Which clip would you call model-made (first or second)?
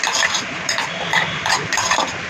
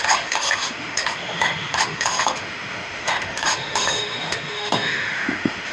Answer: second